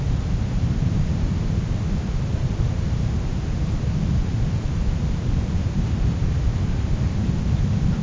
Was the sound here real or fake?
fake